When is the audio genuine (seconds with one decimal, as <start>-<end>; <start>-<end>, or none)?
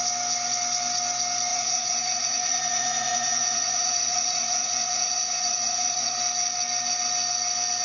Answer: 0.0-1.5; 6.2-7.8